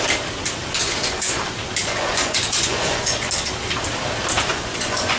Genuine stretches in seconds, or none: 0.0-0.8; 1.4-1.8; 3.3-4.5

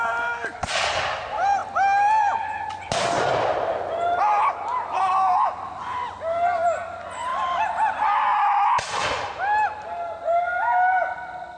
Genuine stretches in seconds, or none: 0.0-11.6

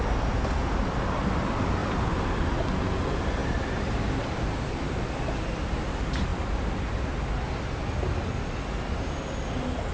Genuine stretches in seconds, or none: 0.0-1.8; 2.6-3.4; 4.8-9.9

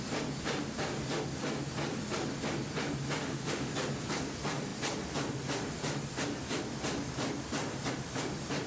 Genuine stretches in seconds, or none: 0.0-3.2; 3.7-8.7

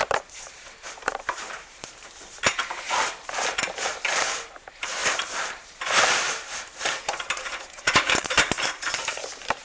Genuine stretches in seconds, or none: none

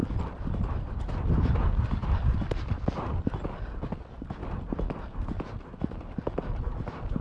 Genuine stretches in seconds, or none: 0.0-7.2

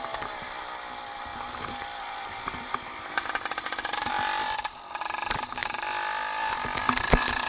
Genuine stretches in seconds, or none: 0.0-7.5

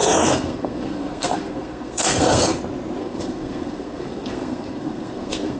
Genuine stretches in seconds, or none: 2.6-3.0